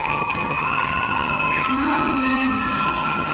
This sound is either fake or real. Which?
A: fake